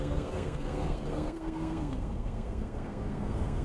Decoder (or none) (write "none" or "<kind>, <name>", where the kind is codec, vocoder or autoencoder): codec, SNAC